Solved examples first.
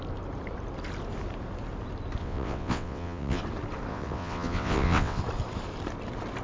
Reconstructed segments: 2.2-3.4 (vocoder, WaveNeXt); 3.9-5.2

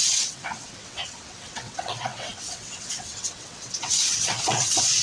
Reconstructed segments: 0.0-5.0 (vocoder, WaveNeXt)

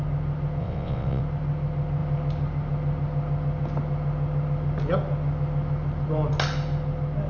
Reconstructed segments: 0.6-1.2 (vocoder, WaveNeXt)

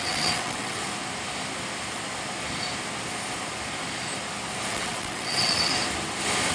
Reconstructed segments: 0.0-0.8 (vocoder, WaveNeXt); 4.7-5.7

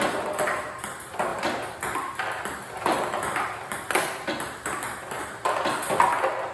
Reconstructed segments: none

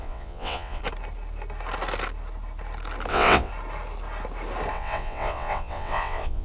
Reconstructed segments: 0.0-0.8 (vocoder, WaveNeXt); 3.1-3.5; 4.7-6.4

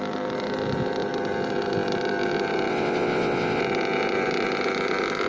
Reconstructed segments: 2.7-3.6 (vocoder, WaveNeXt)

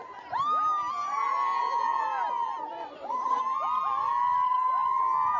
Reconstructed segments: 2.8-3.4 (vocoder, WaveNeXt)